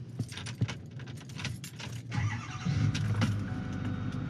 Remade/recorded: recorded